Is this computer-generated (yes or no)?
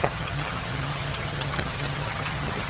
yes